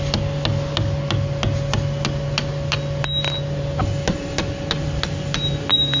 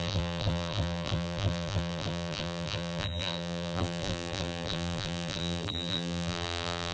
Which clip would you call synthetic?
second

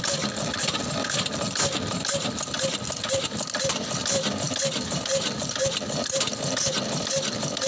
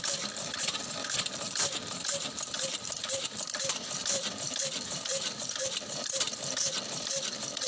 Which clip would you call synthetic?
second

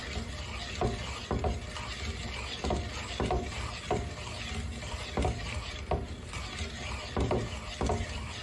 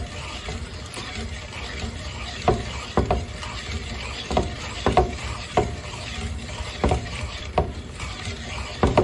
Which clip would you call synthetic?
second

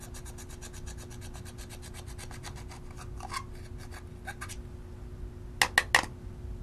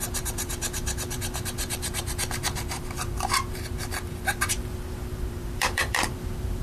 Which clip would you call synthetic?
second